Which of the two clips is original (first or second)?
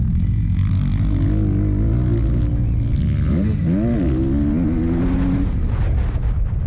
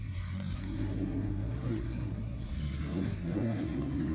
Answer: first